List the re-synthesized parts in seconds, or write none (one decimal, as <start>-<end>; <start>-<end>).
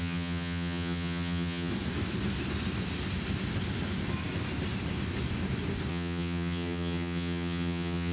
0.0-1.7; 5.9-8.1